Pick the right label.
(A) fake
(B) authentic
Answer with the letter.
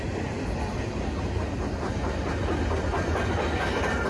B